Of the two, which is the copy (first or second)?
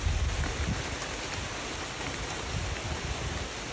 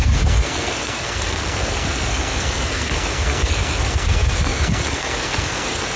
second